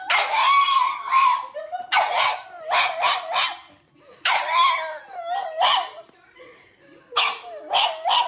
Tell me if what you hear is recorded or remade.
recorded